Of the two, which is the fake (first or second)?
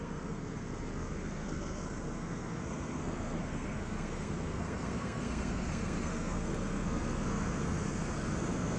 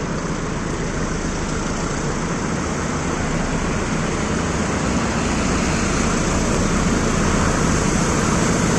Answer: first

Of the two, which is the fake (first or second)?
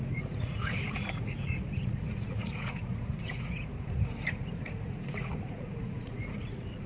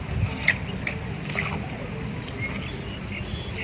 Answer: first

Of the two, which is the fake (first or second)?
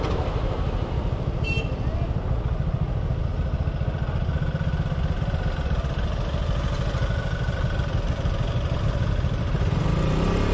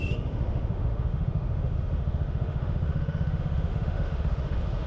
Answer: second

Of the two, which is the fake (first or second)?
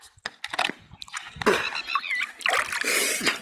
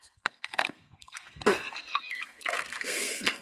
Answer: second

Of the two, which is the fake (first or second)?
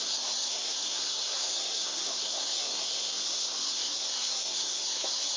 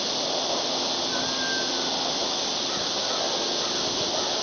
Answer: first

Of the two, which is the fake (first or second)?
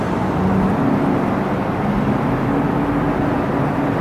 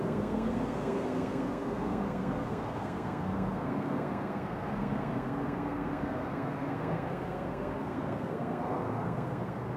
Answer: second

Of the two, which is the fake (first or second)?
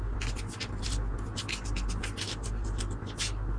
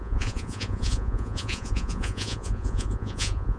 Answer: second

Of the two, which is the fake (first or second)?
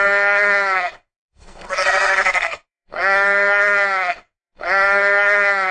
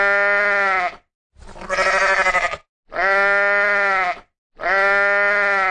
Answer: first